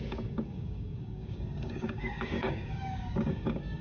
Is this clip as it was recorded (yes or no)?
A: no